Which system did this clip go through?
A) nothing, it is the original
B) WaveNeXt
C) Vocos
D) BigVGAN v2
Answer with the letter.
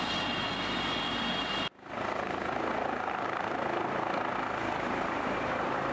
A